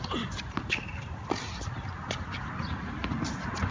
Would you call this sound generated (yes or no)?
yes